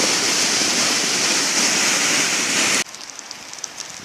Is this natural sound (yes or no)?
yes